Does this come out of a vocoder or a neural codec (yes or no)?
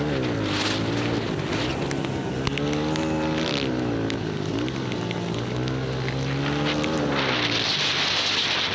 no